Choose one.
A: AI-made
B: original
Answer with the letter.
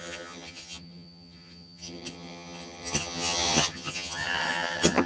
A